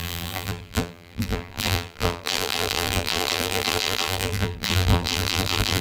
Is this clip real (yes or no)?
no